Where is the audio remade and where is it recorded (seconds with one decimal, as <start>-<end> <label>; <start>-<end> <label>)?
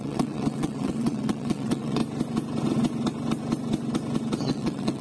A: 0.0-2.0 remade; 2.0-4.4 recorded; 4.4-5.0 remade